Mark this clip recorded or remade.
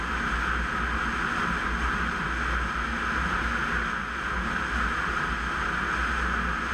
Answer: recorded